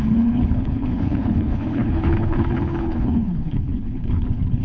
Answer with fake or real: fake